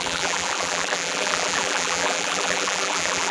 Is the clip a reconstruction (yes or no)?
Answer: yes